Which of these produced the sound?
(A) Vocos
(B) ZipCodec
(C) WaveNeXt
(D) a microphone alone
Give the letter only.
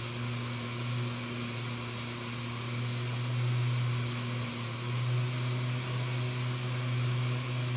D